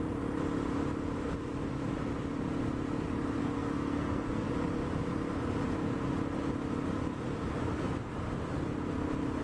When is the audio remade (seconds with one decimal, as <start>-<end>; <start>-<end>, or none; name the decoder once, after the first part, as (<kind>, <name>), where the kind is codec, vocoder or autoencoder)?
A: 3.4-4.5 (codec, SNAC)